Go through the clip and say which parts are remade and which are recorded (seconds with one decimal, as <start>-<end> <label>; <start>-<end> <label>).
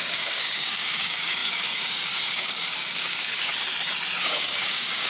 0.0-3.5 remade; 3.5-4.2 recorded; 4.2-5.1 remade